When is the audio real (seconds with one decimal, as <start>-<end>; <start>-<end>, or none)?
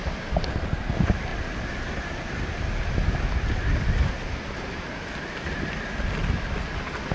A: 0.0-7.1